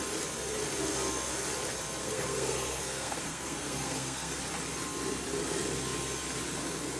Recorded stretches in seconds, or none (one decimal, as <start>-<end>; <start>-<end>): 0.0-2.0; 4.4-7.0

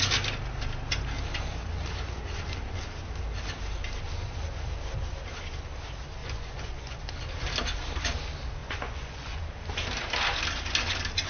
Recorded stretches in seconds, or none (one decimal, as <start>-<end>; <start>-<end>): 0.0-6.2; 7.0-8.6; 9.4-11.3

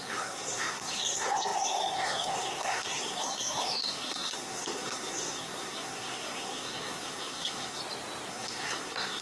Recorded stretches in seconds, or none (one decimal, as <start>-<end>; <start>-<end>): 7.8-8.3

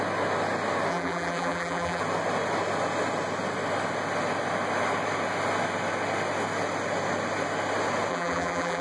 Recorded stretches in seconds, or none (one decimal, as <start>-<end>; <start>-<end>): 0.0-0.9; 2.0-8.1

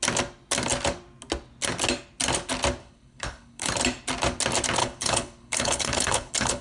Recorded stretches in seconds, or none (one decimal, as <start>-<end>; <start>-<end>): 0.0-2.8; 3.7-4.8